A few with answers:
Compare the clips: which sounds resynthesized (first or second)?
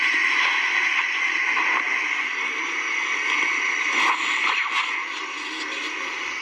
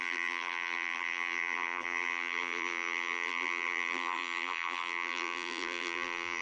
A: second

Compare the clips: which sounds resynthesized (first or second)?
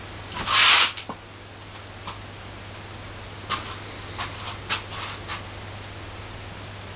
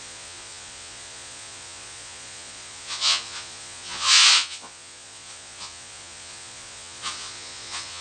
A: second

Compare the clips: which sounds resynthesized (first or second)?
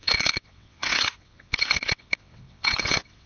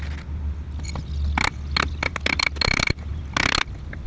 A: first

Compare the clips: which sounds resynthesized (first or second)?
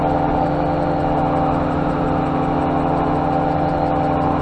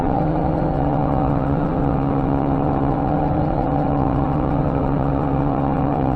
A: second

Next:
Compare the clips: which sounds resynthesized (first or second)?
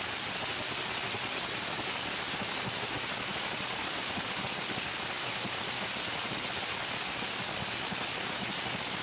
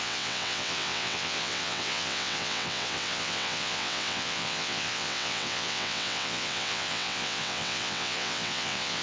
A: second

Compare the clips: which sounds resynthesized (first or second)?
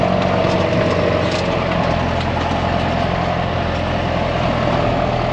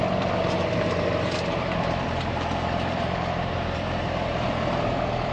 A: second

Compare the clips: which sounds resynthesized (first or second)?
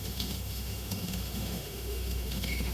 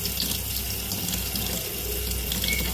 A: first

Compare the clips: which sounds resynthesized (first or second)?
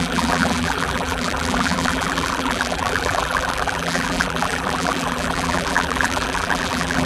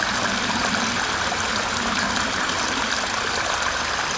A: first